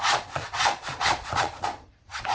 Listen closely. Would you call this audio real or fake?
fake